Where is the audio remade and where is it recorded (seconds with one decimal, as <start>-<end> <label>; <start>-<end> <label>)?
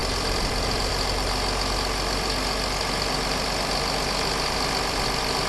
0.0-5.5 recorded